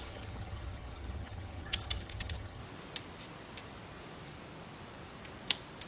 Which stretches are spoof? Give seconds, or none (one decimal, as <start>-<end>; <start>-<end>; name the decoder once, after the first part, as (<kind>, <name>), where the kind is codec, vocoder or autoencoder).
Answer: 0.0-2.6 (vocoder, HiFi-GAN)